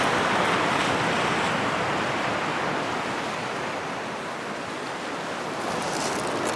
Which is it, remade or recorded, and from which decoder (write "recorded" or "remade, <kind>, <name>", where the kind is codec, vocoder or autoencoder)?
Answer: recorded